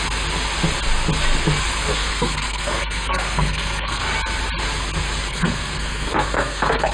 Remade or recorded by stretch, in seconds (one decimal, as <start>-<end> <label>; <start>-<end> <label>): 0.0-1.9 recorded; 1.9-4.0 remade; 4.0-5.3 recorded; 5.3-6.9 remade